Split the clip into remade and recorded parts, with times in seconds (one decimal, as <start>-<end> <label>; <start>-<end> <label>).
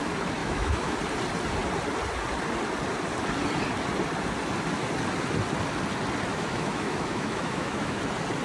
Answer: 0.0-0.4 recorded; 0.4-1.0 remade; 1.0-6.3 recorded; 6.3-8.0 remade; 8.0-8.4 recorded